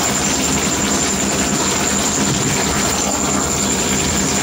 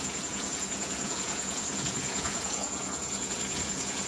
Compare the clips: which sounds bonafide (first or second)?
first